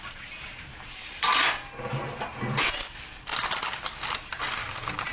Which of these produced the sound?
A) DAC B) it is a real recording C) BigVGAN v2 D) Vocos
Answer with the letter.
B